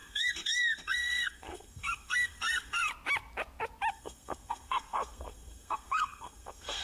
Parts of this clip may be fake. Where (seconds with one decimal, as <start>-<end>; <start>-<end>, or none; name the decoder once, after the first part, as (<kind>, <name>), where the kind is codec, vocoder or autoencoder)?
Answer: 0.0-2.9 (codec, SNAC); 3.9-6.8